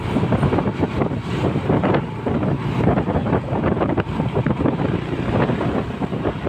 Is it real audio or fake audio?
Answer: fake